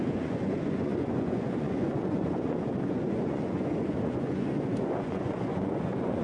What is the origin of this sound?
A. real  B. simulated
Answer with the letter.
B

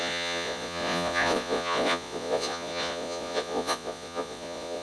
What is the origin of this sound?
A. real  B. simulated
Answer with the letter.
B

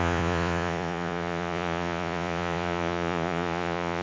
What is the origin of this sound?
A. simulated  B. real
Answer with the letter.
A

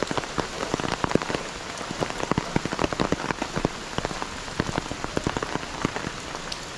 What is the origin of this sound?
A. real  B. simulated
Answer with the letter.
A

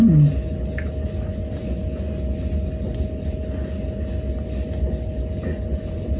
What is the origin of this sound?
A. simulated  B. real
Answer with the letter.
B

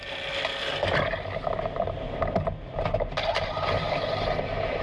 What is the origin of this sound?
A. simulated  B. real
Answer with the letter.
B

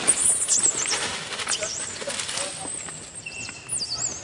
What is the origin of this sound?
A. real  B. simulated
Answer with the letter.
A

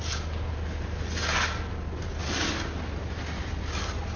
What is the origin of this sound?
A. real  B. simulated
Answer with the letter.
A